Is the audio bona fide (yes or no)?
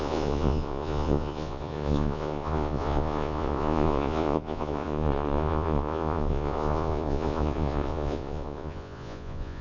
no